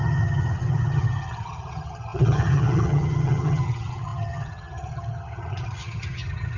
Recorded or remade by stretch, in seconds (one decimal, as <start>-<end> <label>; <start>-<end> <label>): 0.0-6.6 remade